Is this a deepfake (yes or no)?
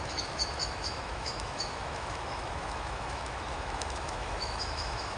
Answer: yes